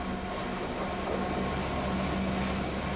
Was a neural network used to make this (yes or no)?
no